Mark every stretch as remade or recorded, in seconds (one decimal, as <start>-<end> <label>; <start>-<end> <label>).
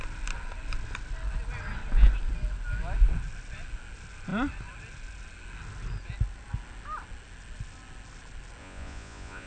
0.0-8.6 recorded; 8.6-9.5 remade